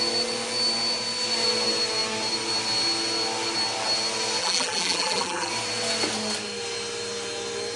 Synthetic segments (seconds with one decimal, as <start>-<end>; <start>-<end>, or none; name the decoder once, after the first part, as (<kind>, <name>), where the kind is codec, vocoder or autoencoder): 4.4-5.5 (vocoder, BigVGAN v2)